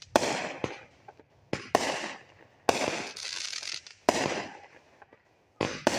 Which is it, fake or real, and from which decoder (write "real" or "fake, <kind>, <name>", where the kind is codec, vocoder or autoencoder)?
real